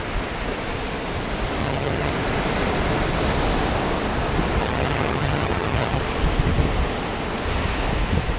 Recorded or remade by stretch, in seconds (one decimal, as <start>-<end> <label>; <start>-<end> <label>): 0.0-1.6 recorded; 1.6-2.1 remade; 2.1-4.6 recorded; 4.6-6.0 remade; 6.0-8.4 recorded